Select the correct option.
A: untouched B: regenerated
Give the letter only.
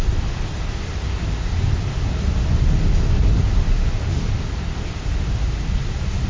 A